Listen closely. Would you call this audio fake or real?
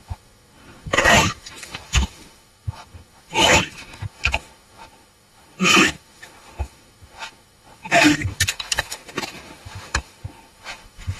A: fake